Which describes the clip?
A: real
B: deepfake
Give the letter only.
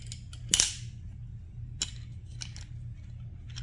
A